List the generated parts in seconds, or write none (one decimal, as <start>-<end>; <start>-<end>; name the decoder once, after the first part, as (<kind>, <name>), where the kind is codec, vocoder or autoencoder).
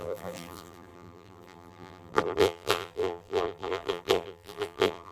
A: 0.0-5.1 (vocoder, BigVGAN v2)